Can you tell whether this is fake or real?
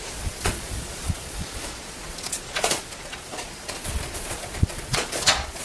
fake